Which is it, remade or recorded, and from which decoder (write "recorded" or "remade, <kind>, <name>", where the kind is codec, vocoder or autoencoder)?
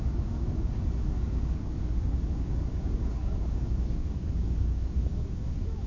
remade, codec, DAC